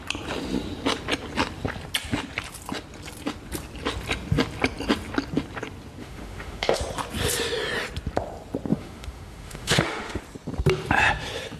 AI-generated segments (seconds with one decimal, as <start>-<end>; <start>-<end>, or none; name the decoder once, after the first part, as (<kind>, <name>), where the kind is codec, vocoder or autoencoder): 6.0-6.8 (autoencoder, DAC-VAE); 8.7-10.2

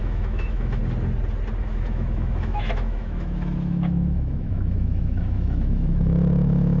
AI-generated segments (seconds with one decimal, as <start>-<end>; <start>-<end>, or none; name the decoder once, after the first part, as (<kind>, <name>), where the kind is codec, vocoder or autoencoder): 0.0-0.8 (autoencoder, DAC-VAE); 1.6-6.8